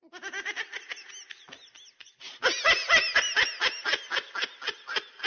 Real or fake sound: real